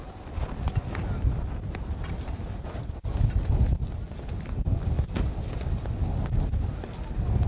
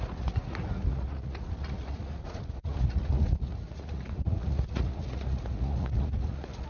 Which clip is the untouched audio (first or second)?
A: first